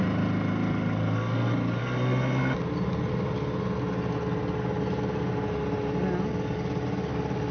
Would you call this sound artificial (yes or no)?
no